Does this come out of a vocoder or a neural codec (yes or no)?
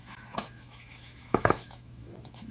yes